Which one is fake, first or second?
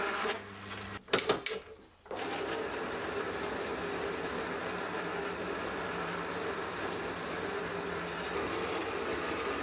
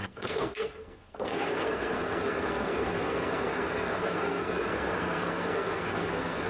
second